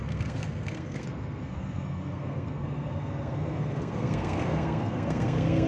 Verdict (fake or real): fake